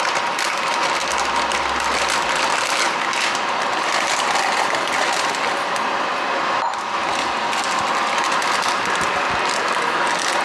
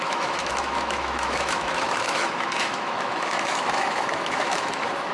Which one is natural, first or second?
first